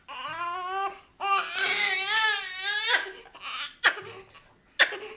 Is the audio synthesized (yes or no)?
no